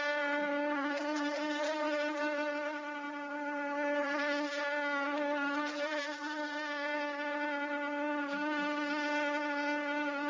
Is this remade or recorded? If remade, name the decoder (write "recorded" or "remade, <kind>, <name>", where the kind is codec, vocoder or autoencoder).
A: recorded